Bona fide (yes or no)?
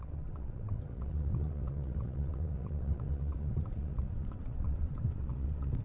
no